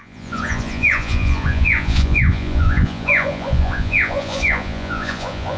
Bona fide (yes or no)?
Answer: no